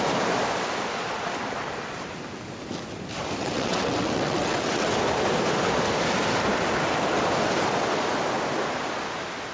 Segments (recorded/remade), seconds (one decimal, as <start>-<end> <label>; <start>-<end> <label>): 0.0-3.4 recorded; 3.4-4.9 remade; 4.9-9.5 recorded